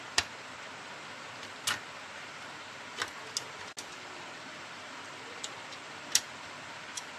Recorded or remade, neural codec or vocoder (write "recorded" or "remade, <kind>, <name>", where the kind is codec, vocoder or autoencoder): recorded